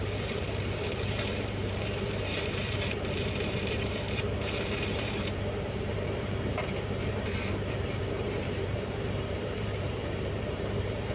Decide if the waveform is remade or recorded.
remade